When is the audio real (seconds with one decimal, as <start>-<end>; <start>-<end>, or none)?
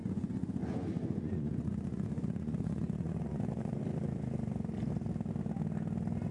3.8-6.3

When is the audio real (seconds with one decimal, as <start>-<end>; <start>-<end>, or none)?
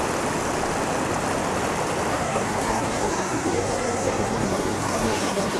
0.0-2.1